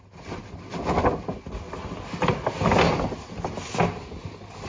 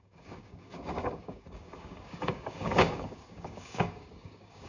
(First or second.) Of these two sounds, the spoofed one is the second